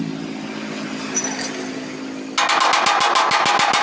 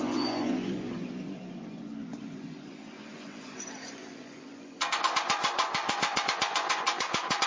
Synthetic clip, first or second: second